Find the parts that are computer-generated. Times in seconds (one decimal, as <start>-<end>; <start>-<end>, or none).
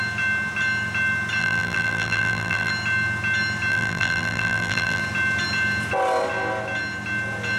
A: 1.4-2.7; 3.7-5.0